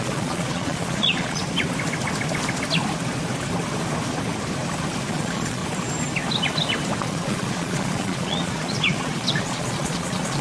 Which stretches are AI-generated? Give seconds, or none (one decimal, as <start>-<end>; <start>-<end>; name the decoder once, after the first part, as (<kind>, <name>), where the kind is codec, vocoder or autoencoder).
0.0-1.4 (vocoder, Vocos); 5.1-5.6; 7.0-10.4